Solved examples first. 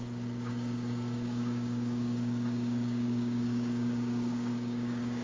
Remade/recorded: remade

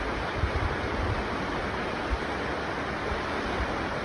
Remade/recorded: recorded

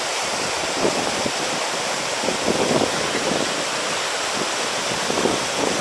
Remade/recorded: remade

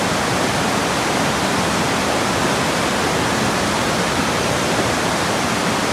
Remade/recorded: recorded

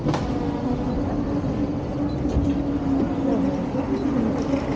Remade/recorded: recorded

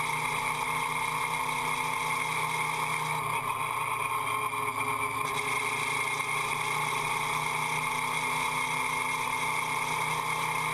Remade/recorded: recorded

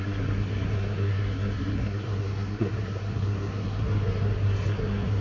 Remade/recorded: remade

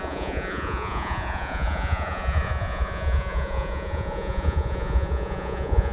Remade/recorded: remade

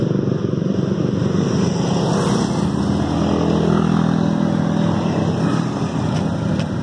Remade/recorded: recorded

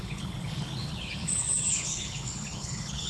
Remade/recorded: remade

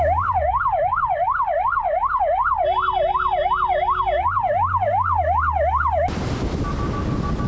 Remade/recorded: recorded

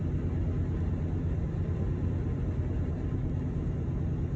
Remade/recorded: recorded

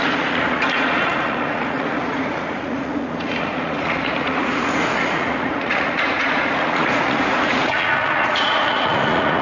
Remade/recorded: remade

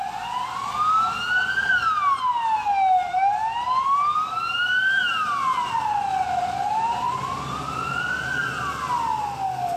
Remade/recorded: recorded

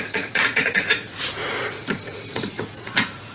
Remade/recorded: remade